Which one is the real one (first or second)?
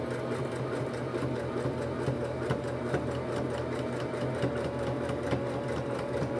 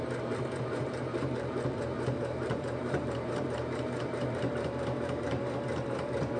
first